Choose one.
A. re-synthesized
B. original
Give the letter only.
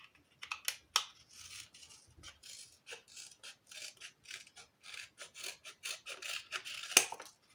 B